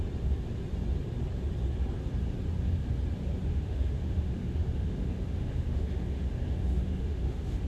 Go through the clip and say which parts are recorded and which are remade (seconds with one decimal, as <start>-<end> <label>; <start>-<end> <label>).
0.0-3.5 recorded; 3.5-7.7 remade